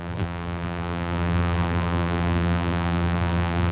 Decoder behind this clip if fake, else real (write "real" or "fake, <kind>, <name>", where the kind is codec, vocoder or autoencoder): fake, vocoder, BigVGAN v2